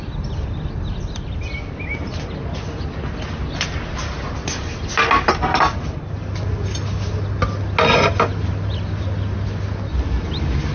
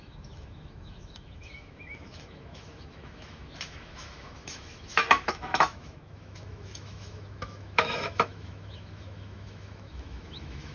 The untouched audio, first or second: first